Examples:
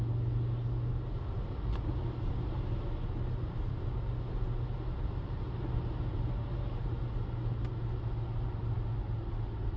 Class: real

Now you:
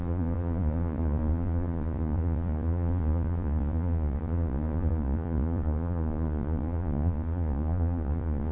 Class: fake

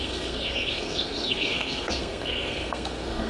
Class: fake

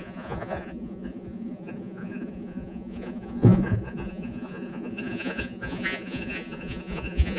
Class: fake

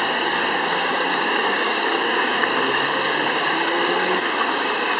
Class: fake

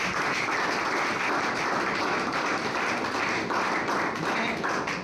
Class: real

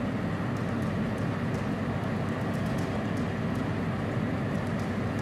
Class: real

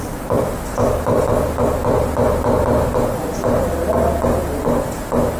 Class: real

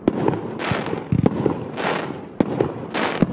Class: real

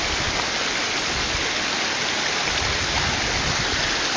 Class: real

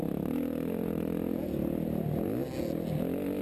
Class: real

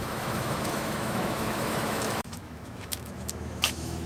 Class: fake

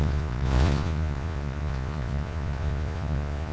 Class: fake